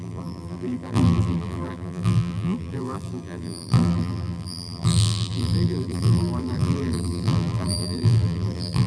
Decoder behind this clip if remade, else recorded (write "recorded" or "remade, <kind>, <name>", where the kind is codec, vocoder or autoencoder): remade, vocoder, BigVGAN v2